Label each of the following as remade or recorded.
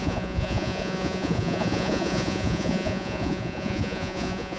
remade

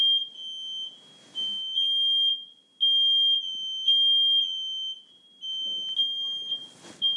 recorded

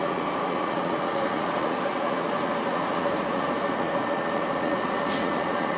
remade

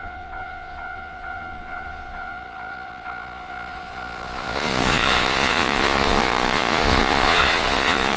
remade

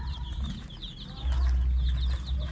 recorded